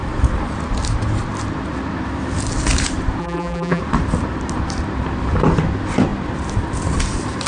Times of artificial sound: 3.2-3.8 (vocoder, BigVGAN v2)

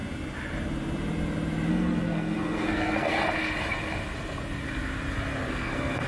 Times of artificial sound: 1.7-3.2 (codec, SNAC); 5.5-6.1

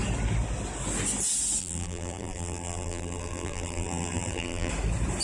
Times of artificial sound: 1.6-4.7 (vocoder, BigVGAN v2)